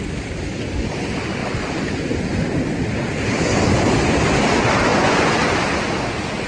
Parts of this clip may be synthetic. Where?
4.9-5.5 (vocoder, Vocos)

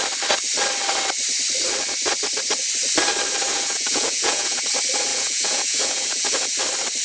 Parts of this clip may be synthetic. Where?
3.5-4.6 (vocoder, Vocos); 5.1-6.6

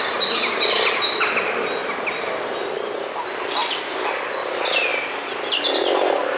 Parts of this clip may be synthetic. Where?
none

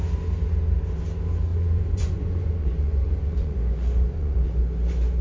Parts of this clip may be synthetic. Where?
1.5-4.6 (vocoder, Vocos)

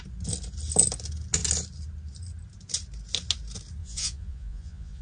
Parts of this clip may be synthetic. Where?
3.8-5.0 (vocoder, Vocos)

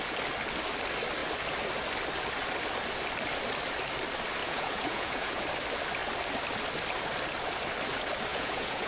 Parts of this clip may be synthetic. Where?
4.4-5.4 (vocoder, Vocos); 8.3-8.9